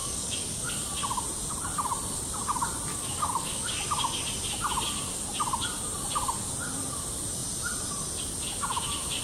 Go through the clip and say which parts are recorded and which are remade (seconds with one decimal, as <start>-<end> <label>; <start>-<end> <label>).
0.0-0.7 remade; 0.7-2.9 recorded; 2.9-3.7 remade; 3.7-9.2 recorded